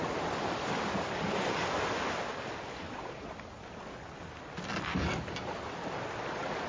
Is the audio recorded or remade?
recorded